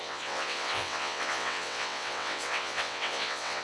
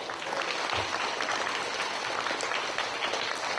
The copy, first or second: first